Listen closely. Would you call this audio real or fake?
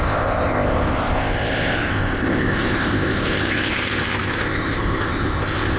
fake